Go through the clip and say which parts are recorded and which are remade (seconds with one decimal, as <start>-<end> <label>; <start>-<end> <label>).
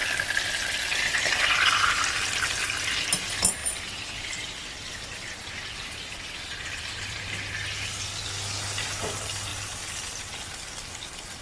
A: 0.0-3.6 recorded; 3.6-7.3 remade; 7.3-9.5 recorded; 9.5-10.3 remade; 10.3-11.4 recorded